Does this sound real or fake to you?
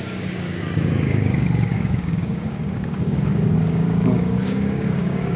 fake